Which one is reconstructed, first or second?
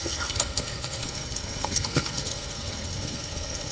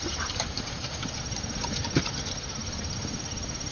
first